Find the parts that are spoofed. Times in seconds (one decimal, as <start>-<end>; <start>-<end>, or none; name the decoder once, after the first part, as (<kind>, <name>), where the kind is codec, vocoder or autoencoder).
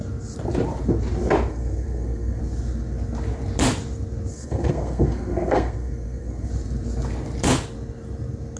1.5-2.4 (codec, SNAC); 4.3-6.5